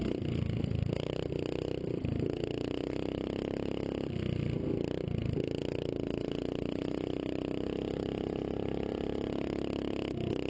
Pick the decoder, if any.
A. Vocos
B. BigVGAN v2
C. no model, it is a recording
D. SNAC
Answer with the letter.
C